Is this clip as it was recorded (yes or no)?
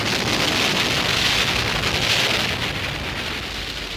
yes